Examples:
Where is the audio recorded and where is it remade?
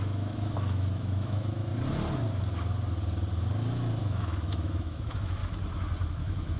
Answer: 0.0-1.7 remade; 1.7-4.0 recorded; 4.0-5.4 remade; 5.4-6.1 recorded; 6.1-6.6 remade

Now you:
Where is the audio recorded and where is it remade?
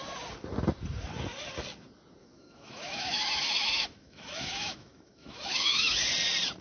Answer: 0.0-2.2 recorded; 2.2-6.0 remade; 6.0-6.6 recorded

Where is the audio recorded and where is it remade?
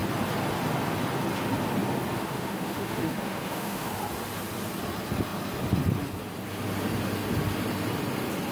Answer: 0.0-2.2 recorded; 2.2-3.9 remade; 3.9-8.5 recorded